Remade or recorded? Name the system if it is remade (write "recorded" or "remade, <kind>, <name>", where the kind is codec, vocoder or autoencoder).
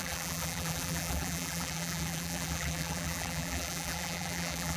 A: remade, vocoder, BigVGAN v2